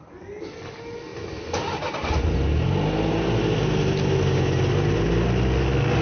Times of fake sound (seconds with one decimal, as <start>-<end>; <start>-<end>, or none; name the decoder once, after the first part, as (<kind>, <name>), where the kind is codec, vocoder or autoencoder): none